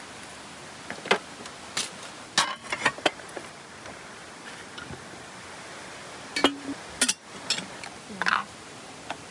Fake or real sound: real